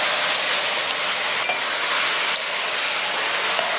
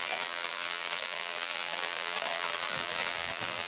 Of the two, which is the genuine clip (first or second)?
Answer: first